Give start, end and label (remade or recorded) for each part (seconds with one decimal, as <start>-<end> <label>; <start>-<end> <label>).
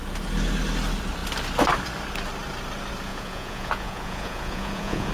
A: 0.0-3.1 recorded; 3.1-5.1 remade